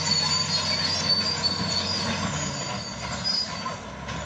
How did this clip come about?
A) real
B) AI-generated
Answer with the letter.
A